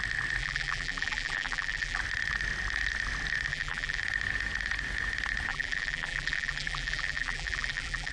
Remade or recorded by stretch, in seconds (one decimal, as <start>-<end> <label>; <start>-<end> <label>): 0.0-0.4 recorded; 0.4-2.0 remade; 2.0-3.5 recorded; 3.5-4.0 remade; 4.0-5.5 recorded; 5.5-8.1 remade